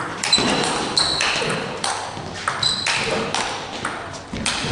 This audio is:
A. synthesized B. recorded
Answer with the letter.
B